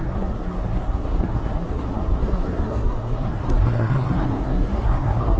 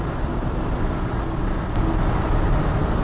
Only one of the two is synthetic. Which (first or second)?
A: first